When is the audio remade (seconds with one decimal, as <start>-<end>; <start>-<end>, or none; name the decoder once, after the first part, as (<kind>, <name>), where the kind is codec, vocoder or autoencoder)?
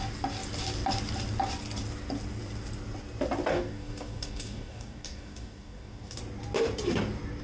3.5-6.2 (codec, DAC)